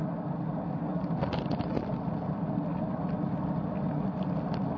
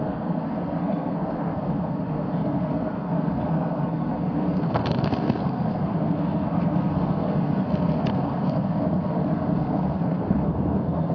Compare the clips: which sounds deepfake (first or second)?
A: second